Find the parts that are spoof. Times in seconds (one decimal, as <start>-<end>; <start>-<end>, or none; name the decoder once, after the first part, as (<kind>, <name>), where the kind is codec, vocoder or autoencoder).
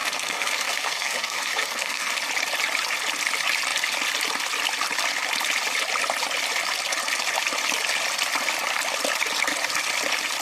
0.0-2.1 (codec, SNAC)